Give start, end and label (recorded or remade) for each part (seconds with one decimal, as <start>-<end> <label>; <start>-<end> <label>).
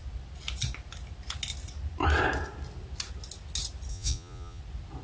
0.0-3.9 recorded; 3.9-4.6 remade; 4.6-5.0 recorded